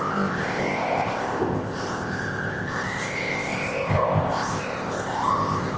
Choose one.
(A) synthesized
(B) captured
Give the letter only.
A